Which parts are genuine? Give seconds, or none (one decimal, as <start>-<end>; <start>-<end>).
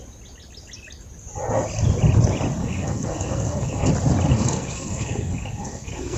0.0-2.6; 3.9-4.3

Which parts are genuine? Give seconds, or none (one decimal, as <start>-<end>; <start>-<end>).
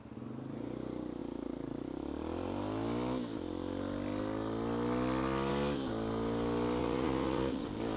0.0-6.8; 7.6-8.0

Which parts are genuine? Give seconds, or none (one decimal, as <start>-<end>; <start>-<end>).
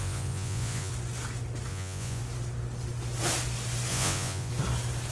0.9-1.7; 2.2-3.9; 4.5-5.1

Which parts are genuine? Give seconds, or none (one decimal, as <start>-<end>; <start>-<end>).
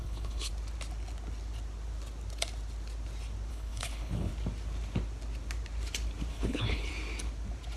0.5-3.5; 4.3-6.3; 6.9-7.8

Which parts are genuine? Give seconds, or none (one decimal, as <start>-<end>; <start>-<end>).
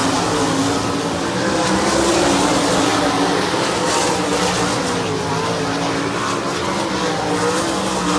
0.0-4.7; 5.3-8.2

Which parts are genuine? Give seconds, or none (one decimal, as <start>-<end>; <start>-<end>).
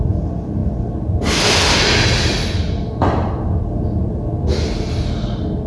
0.0-5.7